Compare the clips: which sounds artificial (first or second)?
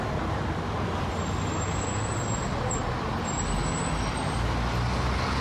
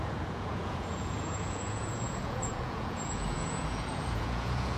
second